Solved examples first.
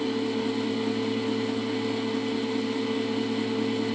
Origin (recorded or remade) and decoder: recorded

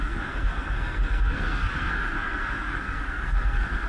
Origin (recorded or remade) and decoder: remade, codec, SNAC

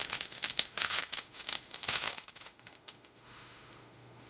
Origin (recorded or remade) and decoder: remade, autoencoder, DAC-VAE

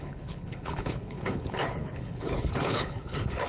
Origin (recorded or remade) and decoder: remade, codec, HILCodec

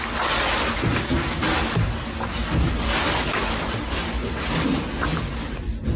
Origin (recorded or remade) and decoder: recorded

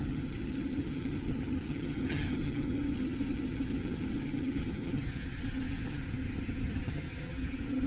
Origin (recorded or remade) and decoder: remade, vocoder, HiFi-GAN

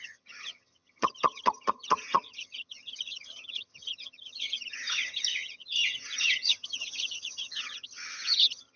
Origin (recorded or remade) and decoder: remade, vocoder, HiFi-GAN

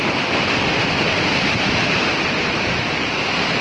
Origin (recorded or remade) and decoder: remade, vocoder, BigVGAN v2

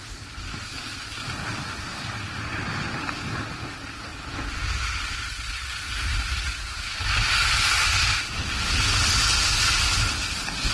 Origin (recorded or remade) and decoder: recorded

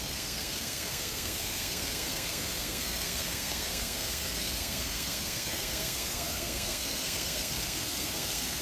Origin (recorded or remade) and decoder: remade, codec, SNAC